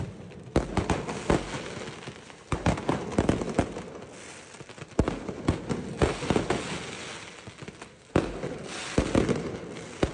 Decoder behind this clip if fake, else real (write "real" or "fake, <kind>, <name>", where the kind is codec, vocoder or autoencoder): real